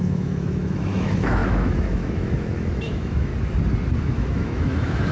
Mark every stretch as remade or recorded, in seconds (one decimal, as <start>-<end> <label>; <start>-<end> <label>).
0.0-3.3 remade; 3.3-4.0 recorded; 4.0-5.1 remade